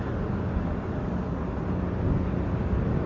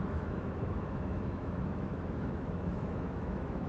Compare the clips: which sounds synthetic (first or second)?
second